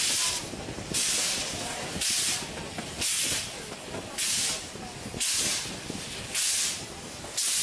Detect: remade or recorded recorded